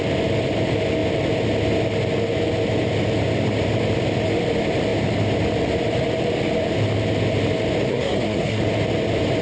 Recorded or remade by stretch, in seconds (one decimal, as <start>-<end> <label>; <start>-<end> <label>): 0.0-7.9 recorded; 7.9-8.6 remade; 8.6-9.4 recorded